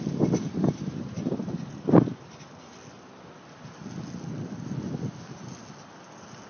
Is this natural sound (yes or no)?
yes